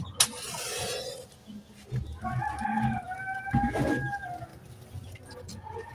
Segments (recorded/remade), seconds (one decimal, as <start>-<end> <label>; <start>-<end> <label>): 0.0-4.5 recorded; 4.5-5.5 remade; 5.5-5.9 recorded